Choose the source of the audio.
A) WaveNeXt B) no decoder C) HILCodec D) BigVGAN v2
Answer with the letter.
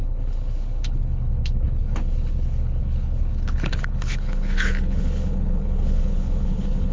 C